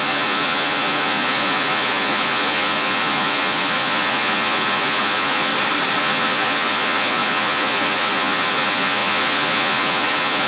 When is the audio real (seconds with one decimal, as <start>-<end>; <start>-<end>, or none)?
5.5-6.0